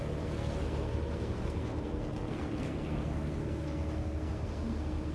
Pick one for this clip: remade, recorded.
remade